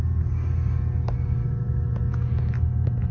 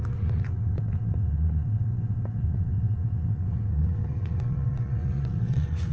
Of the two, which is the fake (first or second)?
second